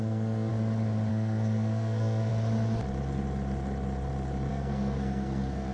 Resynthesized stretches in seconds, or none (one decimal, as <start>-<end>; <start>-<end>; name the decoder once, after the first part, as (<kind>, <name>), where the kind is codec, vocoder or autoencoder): 0.0-0.5 (codec, SNAC); 1.1-2.3; 4.5-5.7